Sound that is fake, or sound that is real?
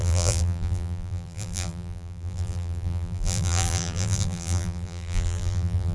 fake